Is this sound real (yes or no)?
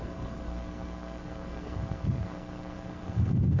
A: no